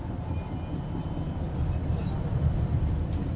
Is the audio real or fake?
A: real